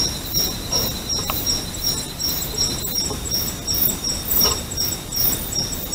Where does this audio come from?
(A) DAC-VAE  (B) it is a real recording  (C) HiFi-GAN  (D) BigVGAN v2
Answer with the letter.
B